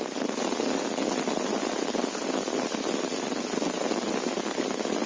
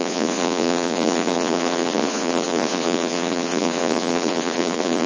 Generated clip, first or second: second